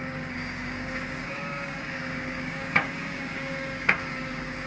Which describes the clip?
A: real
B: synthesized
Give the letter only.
B